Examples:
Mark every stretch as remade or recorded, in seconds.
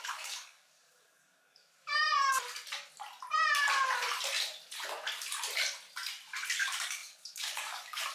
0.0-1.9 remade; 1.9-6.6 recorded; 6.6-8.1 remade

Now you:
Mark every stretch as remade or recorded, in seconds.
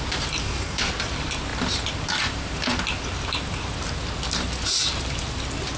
0.0-0.4 recorded; 0.4-0.9 remade; 0.9-5.8 recorded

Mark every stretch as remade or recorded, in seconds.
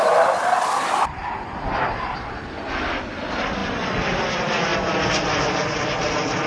0.0-6.5 recorded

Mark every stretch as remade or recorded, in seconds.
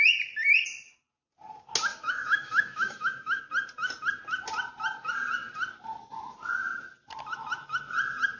0.0-1.9 recorded; 1.9-3.4 remade; 3.4-8.4 recorded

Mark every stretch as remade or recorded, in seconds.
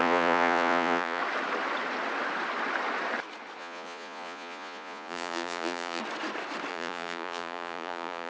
0.0-1.2 remade; 1.2-3.6 recorded; 3.6-6.0 remade; 6.0-6.7 recorded; 6.7-8.3 remade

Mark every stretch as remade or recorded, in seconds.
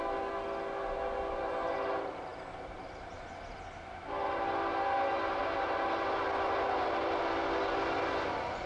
0.0-8.7 recorded